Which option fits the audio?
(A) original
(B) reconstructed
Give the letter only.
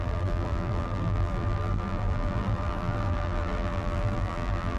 B